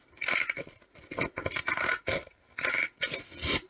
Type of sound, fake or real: real